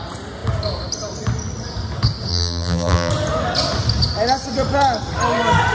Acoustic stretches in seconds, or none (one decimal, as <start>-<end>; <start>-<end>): 0.0-2.3; 3.1-5.7